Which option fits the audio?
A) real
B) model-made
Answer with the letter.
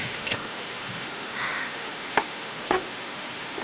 B